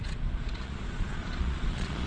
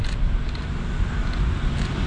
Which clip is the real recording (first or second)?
second